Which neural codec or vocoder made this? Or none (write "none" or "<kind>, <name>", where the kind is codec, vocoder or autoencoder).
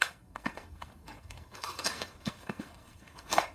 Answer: codec, SNAC